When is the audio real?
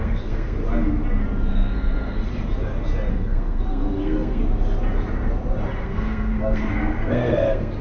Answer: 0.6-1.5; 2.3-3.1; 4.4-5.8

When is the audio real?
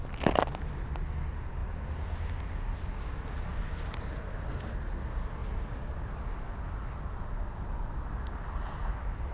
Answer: 0.0-9.3